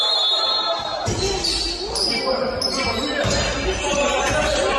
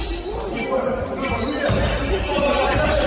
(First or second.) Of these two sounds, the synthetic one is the second